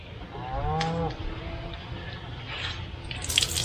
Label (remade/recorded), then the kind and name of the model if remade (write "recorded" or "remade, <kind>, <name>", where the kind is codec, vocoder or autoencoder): recorded